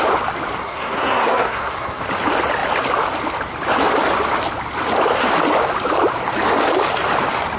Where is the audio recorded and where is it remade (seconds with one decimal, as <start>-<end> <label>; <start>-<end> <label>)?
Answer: 0.0-0.6 recorded; 0.6-2.0 remade; 2.0-7.6 recorded